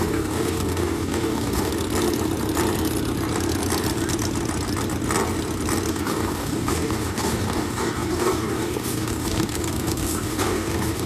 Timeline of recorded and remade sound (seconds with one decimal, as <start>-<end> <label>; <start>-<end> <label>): 0.0-1.7 remade; 1.7-5.9 recorded; 5.9-11.1 remade

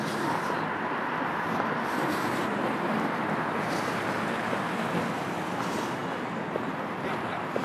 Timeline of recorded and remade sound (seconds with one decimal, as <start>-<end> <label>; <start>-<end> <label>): 0.0-7.6 recorded

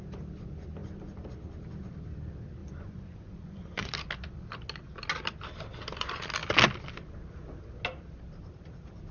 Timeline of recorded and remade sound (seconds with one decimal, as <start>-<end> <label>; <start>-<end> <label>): 0.0-2.6 recorded; 2.6-3.9 remade; 3.9-9.1 recorded